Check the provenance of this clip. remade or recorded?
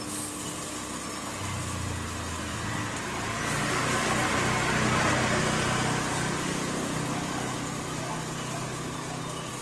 recorded